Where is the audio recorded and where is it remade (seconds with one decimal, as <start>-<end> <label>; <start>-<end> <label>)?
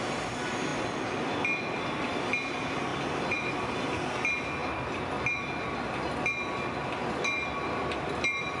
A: 0.0-2.9 recorded; 2.9-3.5 remade; 3.5-8.6 recorded